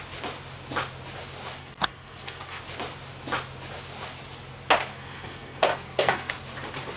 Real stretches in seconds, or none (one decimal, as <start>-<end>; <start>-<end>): 0.0-1.6; 2.6-4.9; 6.3-7.0